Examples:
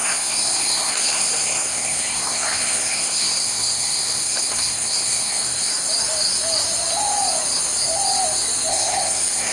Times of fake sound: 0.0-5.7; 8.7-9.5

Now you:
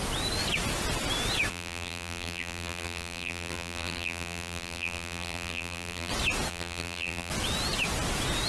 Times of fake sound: 1.5-6.1; 6.5-7.3